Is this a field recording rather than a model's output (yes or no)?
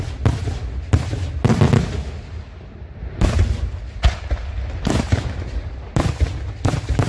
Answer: yes